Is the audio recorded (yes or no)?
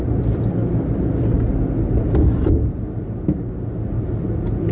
yes